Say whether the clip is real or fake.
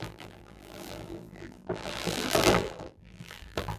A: fake